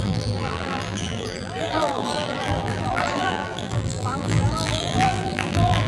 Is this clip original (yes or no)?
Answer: no